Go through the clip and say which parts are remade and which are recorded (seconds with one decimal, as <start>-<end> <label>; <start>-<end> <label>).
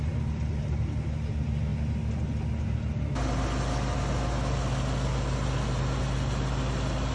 0.0-7.1 recorded